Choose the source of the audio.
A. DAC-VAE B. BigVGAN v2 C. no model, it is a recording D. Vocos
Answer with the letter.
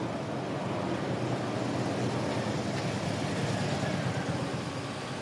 C